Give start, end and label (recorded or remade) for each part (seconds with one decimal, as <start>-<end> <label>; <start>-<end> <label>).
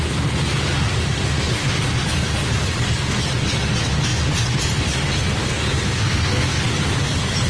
0.0-5.4 recorded; 5.4-6.6 remade; 6.6-7.5 recorded